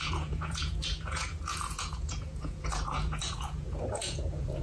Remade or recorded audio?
remade